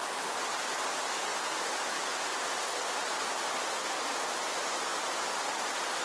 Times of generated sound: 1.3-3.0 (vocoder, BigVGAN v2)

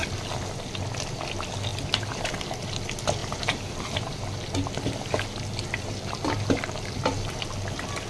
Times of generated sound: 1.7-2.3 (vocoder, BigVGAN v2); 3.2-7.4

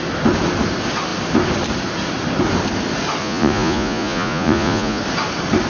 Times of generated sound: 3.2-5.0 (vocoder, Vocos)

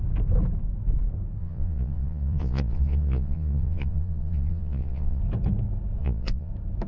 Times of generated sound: 1.4-5.2 (vocoder, Vocos); 6.0-6.5

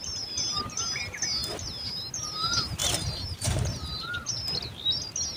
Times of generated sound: 2.8-3.7 (vocoder, BigVGAN v2)

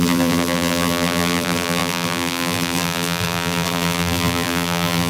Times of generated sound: 0.0-5.1 (vocoder, BigVGAN v2)